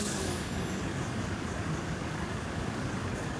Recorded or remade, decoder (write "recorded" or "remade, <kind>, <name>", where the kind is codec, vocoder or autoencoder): remade, codec, DAC